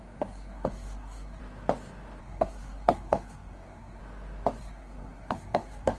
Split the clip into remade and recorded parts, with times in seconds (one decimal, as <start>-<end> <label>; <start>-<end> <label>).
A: 0.0-1.4 remade; 1.4-2.2 recorded; 2.2-4.0 remade; 4.0-4.6 recorded; 4.6-6.0 remade